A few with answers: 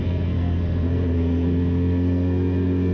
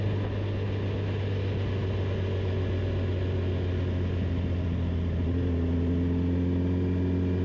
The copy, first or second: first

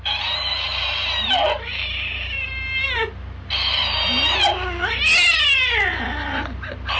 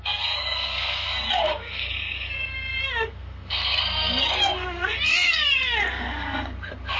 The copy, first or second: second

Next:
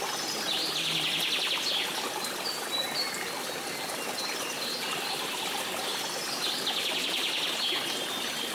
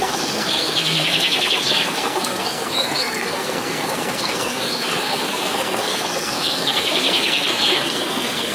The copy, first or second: second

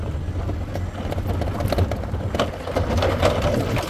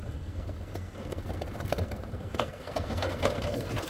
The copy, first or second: second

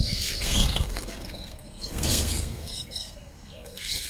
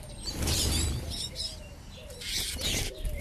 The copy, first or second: first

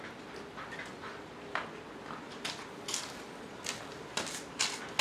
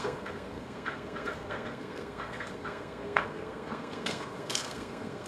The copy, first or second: second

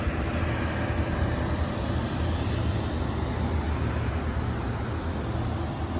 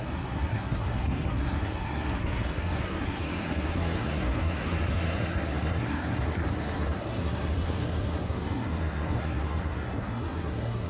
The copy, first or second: second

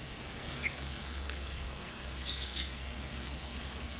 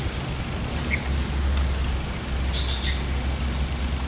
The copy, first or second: first